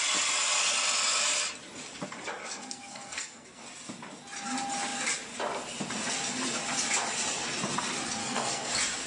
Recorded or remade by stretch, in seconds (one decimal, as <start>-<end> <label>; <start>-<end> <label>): 0.0-2.4 recorded; 2.4-3.6 remade; 3.6-8.2 recorded; 8.2-8.7 remade; 8.7-9.1 recorded